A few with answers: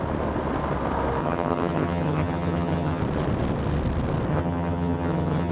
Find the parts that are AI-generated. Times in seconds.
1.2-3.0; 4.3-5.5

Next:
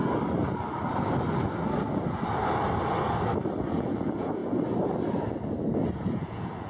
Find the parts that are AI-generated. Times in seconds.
3.7-4.4; 6.1-6.7

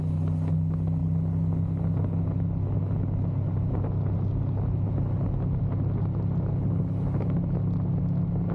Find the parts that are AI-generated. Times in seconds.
none